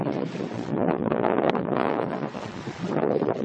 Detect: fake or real fake